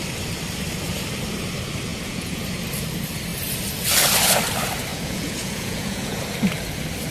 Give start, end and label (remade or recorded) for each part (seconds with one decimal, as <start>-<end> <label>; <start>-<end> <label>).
0.0-1.9 recorded; 1.9-2.4 remade; 2.4-4.9 recorded; 4.9-6.2 remade; 6.2-7.1 recorded